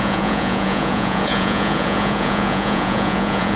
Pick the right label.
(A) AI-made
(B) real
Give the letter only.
A